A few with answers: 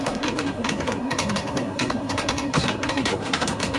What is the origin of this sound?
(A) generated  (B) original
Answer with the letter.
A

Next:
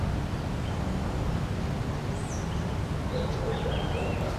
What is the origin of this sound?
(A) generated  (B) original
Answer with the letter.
B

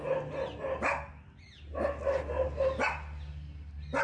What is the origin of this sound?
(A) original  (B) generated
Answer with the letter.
A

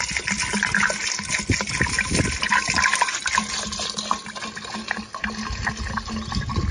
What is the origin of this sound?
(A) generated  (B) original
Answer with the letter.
B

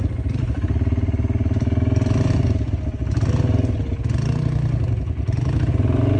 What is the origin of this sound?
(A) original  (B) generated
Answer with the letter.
A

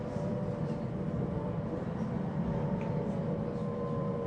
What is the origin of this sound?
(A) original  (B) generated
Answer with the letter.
B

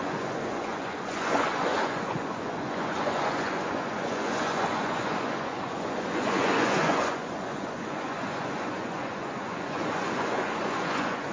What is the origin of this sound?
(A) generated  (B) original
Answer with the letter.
A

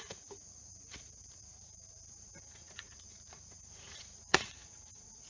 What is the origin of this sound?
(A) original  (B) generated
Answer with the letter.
B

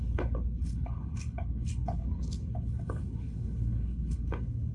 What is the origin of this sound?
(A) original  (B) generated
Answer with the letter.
B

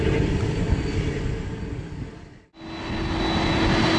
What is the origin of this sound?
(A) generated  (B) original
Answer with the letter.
B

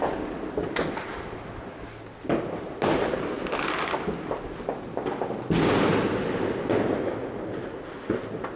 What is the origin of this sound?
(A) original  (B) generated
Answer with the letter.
A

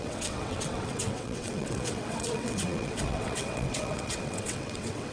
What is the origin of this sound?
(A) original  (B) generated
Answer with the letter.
B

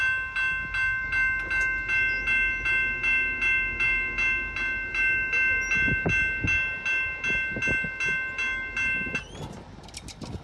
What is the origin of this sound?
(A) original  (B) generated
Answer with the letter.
A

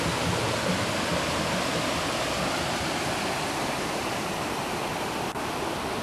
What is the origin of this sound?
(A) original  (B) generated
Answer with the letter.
A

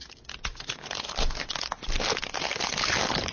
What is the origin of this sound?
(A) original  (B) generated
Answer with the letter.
A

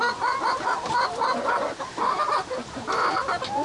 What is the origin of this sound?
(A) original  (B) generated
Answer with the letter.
A